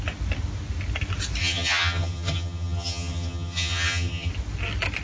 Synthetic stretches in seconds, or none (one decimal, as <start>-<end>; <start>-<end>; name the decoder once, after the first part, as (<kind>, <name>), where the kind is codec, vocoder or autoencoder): 1.4-4.3 (vocoder, HiFi-GAN)